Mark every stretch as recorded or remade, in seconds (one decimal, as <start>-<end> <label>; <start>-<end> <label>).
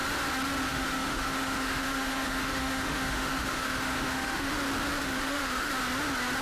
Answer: 0.0-0.7 recorded; 0.7-4.5 remade; 4.5-5.0 recorded; 5.0-5.7 remade; 5.7-6.4 recorded